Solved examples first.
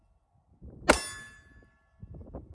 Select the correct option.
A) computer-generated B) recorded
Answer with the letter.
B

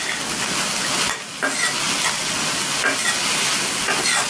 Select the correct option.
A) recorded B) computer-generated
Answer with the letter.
A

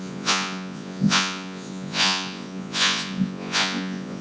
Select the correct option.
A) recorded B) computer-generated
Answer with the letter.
B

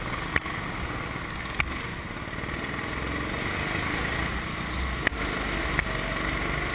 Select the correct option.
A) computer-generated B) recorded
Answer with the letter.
B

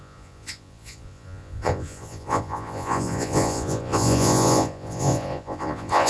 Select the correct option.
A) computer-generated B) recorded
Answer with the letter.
A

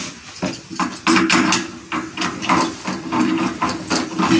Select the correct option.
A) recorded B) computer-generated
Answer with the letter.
A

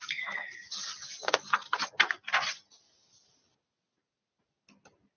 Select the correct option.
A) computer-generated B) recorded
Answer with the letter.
B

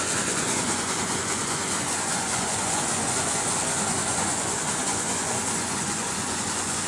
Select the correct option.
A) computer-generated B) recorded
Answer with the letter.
A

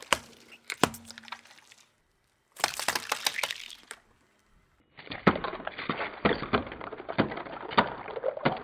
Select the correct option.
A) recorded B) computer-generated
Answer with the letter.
B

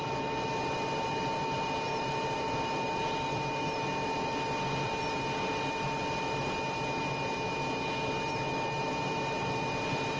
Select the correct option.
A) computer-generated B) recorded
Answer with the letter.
B